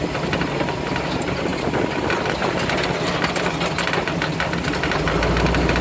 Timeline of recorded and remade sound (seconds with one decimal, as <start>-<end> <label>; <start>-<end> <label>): 0.0-5.8 recorded